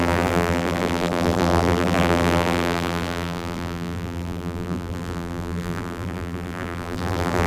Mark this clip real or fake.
fake